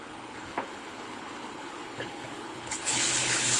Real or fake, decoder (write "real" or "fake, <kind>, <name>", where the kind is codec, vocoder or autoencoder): fake, codec, HILCodec